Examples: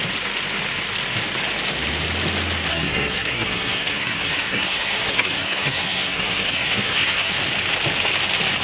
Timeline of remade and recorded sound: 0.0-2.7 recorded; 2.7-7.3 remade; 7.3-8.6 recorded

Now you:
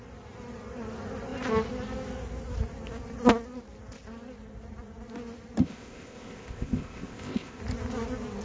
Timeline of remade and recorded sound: 0.0-5.6 recorded; 5.6-7.6 remade; 7.6-8.4 recorded